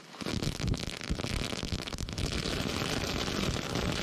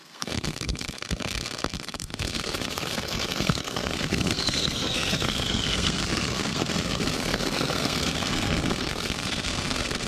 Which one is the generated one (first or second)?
second